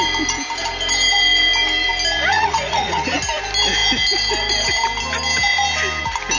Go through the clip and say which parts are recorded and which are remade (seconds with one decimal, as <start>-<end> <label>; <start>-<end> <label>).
0.0-2.3 recorded; 2.3-3.2 remade; 3.2-6.4 recorded

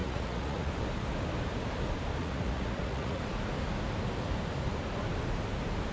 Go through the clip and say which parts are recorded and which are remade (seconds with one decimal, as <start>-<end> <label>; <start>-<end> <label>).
0.0-0.7 remade; 0.7-2.2 recorded; 2.2-3.2 remade; 3.2-5.9 recorded

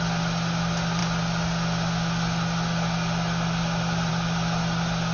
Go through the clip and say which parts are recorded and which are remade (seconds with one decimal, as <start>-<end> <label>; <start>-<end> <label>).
0.0-5.1 recorded

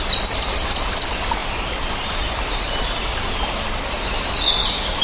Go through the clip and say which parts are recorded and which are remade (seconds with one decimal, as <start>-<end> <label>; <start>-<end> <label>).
0.0-5.0 recorded

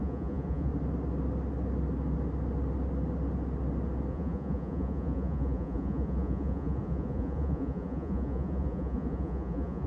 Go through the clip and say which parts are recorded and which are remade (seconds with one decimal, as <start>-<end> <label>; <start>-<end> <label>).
0.0-0.7 remade; 0.7-4.1 recorded; 4.1-9.9 remade